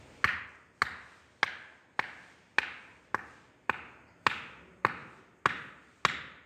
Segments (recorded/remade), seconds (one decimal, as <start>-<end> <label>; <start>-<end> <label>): 0.0-6.5 recorded